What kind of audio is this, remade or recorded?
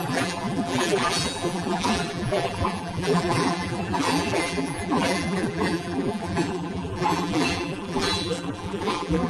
remade